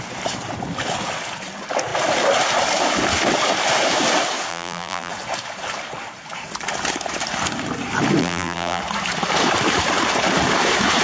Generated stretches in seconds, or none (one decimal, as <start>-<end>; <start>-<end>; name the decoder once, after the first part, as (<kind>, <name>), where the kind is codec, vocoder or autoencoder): 4.5-5.1 (vocoder, BigVGAN v2); 8.2-8.8